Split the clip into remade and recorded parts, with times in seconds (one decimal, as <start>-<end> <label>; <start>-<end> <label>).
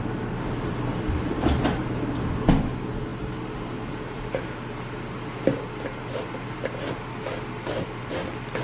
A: 0.0-8.6 recorded